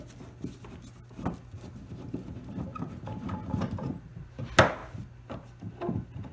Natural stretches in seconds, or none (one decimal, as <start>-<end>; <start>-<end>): 0.0-6.3